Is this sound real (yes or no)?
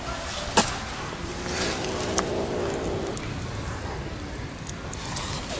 yes